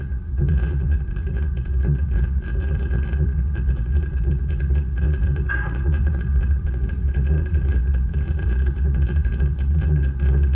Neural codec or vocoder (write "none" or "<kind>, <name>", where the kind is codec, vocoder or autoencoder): vocoder, Vocos